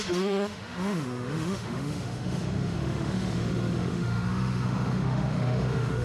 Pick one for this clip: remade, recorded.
remade